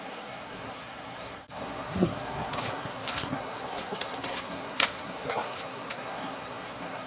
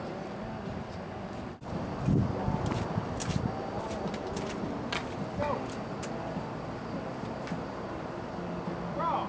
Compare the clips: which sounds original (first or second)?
second